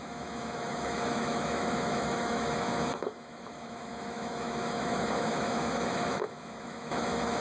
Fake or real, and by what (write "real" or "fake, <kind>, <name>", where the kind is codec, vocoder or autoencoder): fake, autoencoder, DAC-VAE